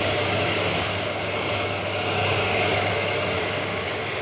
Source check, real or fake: fake